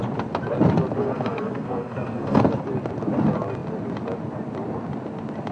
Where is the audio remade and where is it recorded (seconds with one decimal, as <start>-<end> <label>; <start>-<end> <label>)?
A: 0.0-1.0 recorded; 1.0-2.4 remade; 2.4-5.5 recorded